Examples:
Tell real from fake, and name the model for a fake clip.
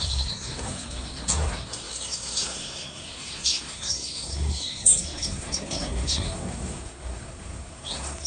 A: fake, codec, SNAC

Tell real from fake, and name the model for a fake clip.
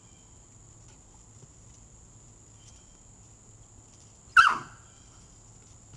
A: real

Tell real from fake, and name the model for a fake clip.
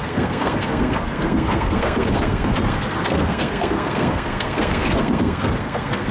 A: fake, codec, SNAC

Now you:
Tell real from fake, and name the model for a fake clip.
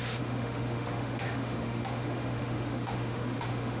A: fake, autoencoder, DAC-VAE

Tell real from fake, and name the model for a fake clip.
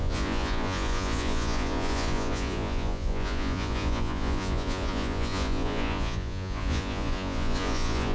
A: fake, vocoder, Vocos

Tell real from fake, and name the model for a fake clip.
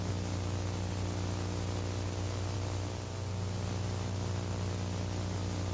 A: real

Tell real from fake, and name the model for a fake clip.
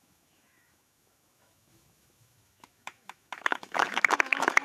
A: fake, autoencoder, DAC-VAE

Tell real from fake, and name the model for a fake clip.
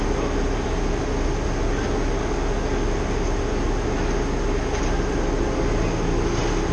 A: real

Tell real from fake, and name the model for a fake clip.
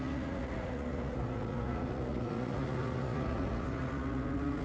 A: fake, vocoder, Vocos